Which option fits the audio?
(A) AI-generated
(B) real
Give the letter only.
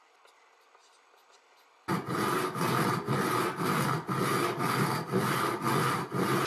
B